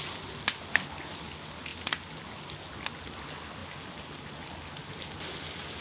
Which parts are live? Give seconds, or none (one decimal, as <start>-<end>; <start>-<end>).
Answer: 0.0-5.8